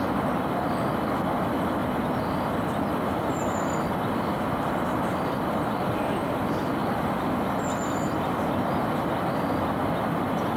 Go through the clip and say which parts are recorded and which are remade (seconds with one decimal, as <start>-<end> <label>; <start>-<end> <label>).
0.0-6.8 recorded; 6.8-8.5 remade; 8.5-10.6 recorded